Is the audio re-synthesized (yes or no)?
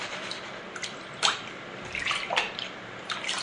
no